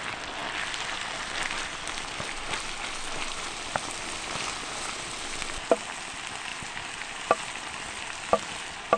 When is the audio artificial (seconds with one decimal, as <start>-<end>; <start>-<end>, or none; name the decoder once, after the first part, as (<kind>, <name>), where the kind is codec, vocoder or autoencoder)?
none